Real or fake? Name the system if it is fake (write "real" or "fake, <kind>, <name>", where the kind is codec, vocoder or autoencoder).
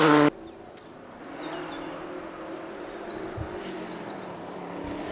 real